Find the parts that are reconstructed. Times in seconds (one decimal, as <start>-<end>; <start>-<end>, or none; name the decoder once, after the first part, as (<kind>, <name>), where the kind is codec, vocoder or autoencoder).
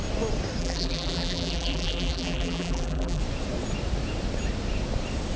0.6-3.2 (vocoder, BigVGAN v2)